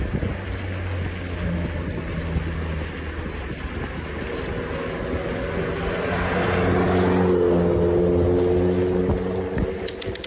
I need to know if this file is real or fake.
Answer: real